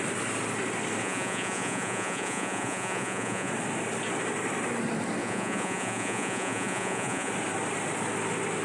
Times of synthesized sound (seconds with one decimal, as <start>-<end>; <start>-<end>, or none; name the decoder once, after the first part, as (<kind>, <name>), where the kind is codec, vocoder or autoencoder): 1.0-3.5 (vocoder, Vocos); 5.2-7.3